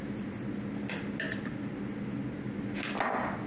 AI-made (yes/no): no